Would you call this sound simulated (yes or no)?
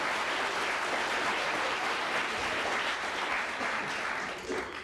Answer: no